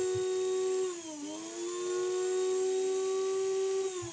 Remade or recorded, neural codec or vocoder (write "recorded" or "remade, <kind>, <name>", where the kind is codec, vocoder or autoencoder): recorded